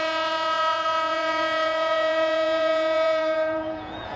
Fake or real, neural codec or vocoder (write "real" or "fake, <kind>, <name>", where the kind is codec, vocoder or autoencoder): fake, vocoder, Vocos